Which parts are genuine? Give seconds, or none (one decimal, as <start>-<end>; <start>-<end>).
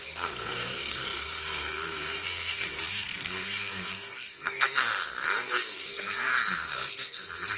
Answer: none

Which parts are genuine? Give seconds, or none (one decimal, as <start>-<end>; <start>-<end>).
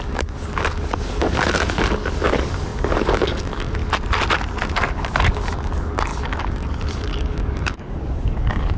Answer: 3.8-4.9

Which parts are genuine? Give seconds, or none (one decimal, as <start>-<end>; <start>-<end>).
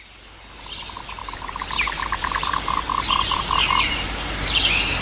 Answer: 0.0-1.2; 3.4-5.0